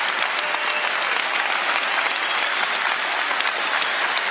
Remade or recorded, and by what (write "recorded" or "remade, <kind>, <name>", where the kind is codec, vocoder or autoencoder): recorded